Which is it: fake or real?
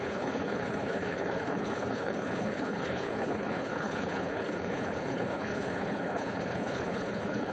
fake